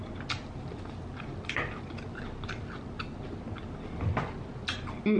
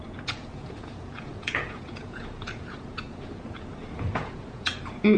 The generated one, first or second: second